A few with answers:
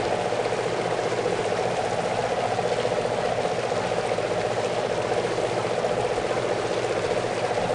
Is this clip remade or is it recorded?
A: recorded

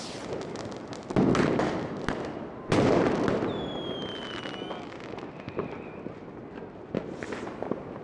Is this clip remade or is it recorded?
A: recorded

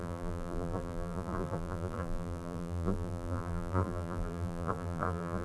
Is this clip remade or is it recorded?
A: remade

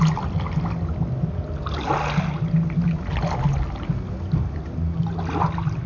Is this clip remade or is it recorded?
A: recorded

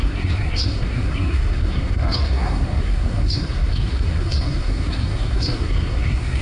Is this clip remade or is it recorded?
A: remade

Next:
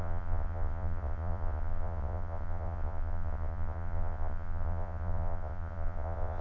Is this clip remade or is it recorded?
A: remade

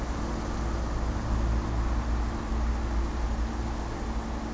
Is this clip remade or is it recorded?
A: recorded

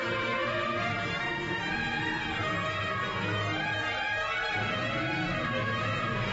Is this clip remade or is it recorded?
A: recorded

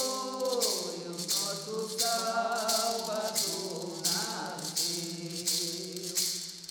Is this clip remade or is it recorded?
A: remade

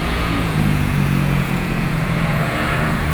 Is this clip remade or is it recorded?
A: remade